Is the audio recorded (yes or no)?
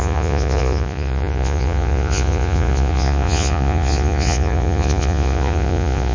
no